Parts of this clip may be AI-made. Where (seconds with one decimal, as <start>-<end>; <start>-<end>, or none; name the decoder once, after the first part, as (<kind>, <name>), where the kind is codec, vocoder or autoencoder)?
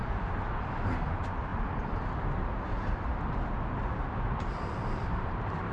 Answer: 0.0-1.5 (vocoder, BigVGAN v2); 2.7-3.1; 4.7-5.7